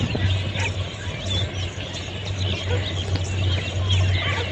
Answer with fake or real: real